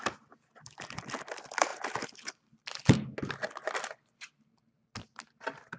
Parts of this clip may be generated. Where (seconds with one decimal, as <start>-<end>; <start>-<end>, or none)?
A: none